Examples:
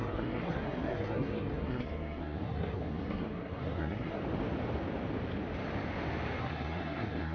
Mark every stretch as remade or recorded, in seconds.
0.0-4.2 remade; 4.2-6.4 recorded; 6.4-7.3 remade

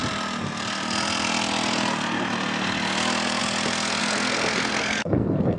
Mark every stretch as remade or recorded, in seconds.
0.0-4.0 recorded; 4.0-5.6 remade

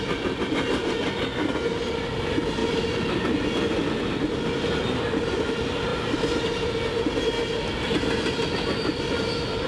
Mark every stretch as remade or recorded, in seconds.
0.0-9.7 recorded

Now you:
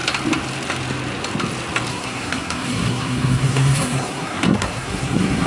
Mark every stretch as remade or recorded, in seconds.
0.0-1.9 recorded; 1.9-5.5 remade